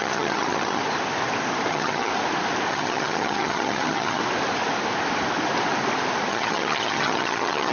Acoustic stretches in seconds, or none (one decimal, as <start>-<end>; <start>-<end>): 0.8-1.7; 2.1-2.7; 4.2-6.3